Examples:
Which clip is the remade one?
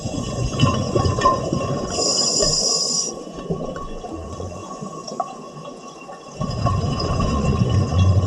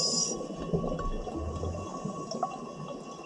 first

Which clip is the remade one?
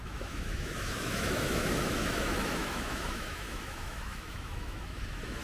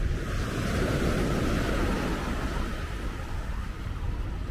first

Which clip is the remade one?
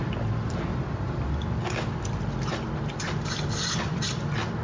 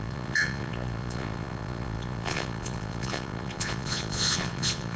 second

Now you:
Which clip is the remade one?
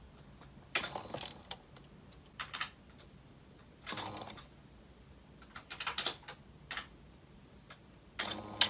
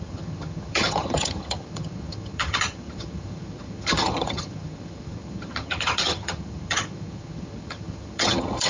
second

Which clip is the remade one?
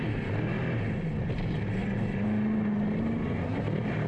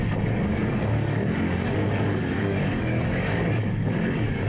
second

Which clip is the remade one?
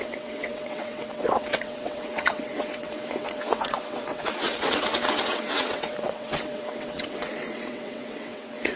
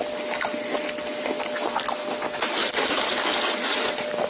first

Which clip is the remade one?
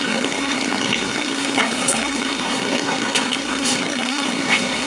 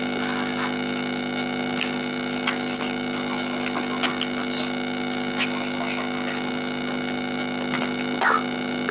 first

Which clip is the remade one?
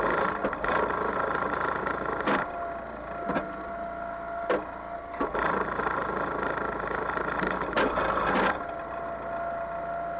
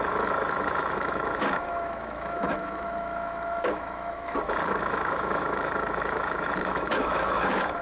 second